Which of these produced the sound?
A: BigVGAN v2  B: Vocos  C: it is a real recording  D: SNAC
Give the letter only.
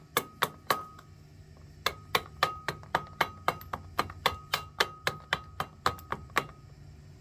C